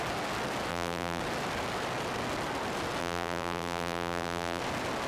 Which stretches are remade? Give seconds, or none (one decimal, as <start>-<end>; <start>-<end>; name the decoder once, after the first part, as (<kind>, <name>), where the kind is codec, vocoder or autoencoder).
0.7-1.2 (vocoder, BigVGAN v2); 3.0-4.6